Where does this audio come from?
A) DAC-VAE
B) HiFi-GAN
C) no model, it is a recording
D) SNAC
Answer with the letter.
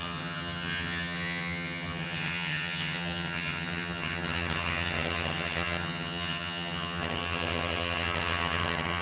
B